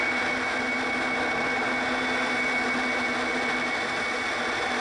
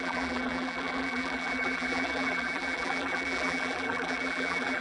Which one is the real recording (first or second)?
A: first